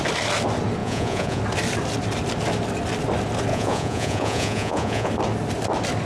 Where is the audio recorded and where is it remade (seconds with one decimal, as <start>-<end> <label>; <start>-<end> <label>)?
0.0-0.8 recorded; 0.8-1.4 remade; 1.4-3.5 recorded; 3.5-5.1 remade; 5.1-6.0 recorded